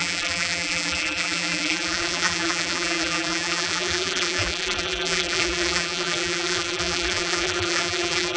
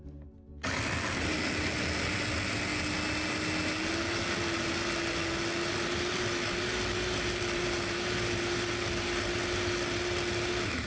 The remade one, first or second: first